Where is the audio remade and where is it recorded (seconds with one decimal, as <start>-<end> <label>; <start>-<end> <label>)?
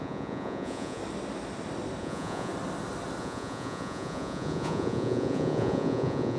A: 0.0-1.0 remade; 1.0-2.0 recorded; 2.0-2.5 remade; 2.5-3.2 recorded; 3.2-6.4 remade